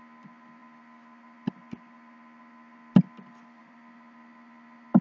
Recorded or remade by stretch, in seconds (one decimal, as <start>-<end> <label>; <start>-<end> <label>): 0.0-5.0 recorded